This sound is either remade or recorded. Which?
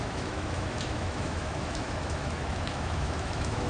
remade